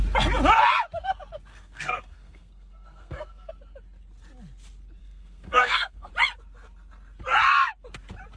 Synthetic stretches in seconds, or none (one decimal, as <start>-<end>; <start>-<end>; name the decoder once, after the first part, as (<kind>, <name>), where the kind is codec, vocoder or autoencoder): 1.5-3.5 (codec, SNAC); 5.0-6.1